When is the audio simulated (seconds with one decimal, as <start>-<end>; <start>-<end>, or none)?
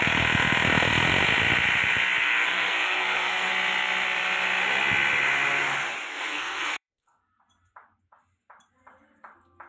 2.2-3.5; 6.1-7.2